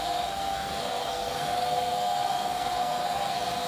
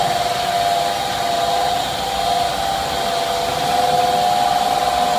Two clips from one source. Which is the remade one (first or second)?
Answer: first